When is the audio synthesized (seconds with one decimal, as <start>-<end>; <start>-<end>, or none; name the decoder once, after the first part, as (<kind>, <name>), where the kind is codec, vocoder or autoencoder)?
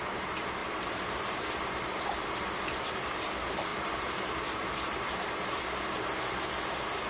0.6-2.6 (vocoder, BigVGAN v2); 3.7-5.2